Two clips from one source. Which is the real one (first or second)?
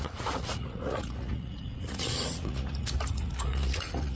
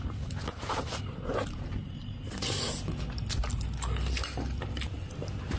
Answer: second